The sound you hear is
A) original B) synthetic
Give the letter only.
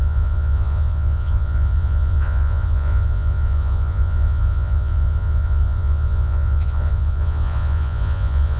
B